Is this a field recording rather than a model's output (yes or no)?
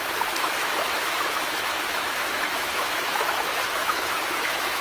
no